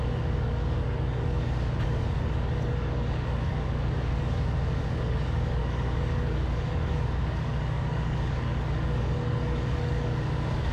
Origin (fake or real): fake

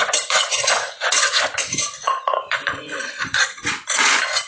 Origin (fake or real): fake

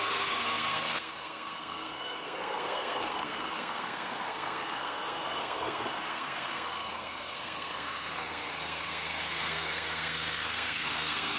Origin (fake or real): fake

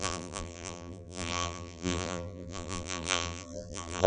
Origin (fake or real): fake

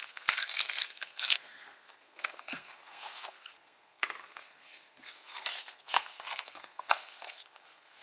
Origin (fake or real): fake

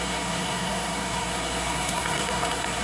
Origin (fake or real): fake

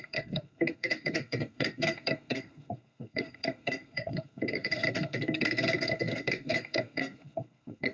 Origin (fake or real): fake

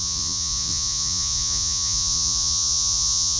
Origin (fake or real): fake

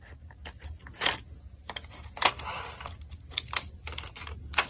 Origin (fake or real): real